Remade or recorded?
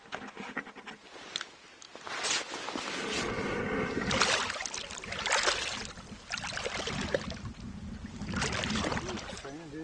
recorded